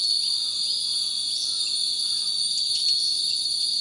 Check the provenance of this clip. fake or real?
real